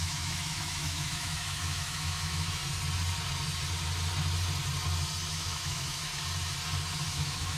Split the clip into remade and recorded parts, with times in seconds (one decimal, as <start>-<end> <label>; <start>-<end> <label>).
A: 0.0-2.6 remade; 2.6-5.3 recorded; 5.3-6.1 remade; 6.1-7.1 recorded; 7.1-7.6 remade